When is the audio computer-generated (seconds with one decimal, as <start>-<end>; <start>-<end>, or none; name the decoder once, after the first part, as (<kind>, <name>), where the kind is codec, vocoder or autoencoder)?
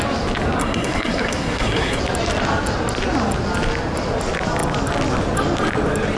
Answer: 0.6-2.0 (codec, SNAC)